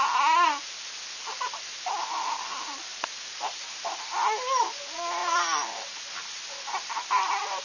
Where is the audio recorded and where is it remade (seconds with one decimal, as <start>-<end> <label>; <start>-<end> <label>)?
0.0-5.2 recorded; 5.2-7.6 remade